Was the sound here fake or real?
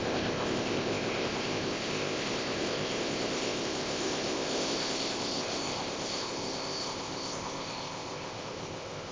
fake